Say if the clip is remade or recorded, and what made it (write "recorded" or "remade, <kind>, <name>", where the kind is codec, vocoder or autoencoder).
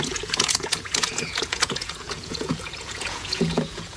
remade, vocoder, Vocos